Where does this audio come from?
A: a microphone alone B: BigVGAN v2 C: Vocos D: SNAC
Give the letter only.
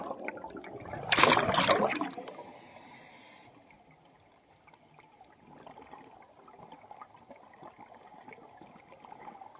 A